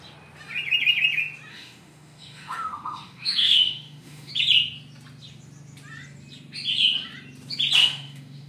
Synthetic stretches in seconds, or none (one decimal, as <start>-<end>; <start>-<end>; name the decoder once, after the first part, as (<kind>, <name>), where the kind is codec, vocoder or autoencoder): 1.5-4.3 (autoencoder, DAC-VAE); 7.8-8.5